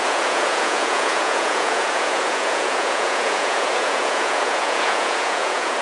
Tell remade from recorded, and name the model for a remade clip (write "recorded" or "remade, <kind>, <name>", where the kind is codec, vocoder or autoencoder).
remade, vocoder, Vocos